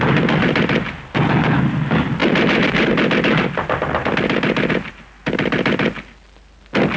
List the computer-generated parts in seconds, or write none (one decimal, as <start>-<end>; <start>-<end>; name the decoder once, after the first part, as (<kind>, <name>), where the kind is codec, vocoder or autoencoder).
none